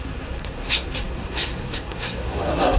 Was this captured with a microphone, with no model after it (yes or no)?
no